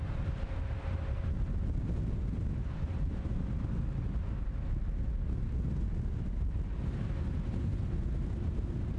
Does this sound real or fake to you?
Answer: real